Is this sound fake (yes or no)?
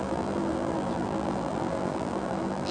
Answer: yes